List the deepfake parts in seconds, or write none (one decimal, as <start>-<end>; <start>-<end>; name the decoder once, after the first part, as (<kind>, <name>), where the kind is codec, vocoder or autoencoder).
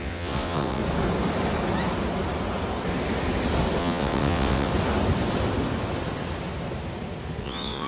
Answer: 0.0-0.8 (vocoder, WaveNeXt); 3.8-4.7; 7.4-7.9